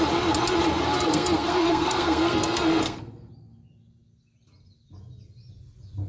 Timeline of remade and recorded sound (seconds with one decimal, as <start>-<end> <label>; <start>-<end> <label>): 0.0-0.8 recorded; 0.8-3.3 remade; 3.3-6.1 recorded